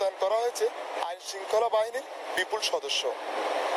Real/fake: real